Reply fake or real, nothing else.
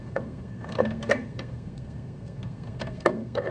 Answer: fake